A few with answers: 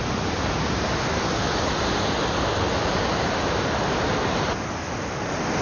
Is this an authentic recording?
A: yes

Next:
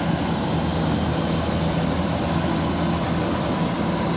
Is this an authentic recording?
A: yes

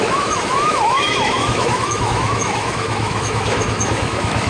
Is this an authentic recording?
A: no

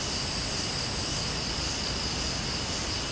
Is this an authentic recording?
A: yes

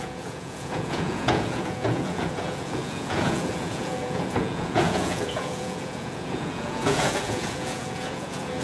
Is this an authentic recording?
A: no